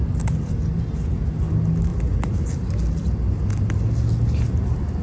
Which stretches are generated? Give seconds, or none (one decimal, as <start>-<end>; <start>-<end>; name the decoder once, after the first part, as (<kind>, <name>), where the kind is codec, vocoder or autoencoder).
none